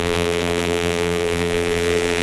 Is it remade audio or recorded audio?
remade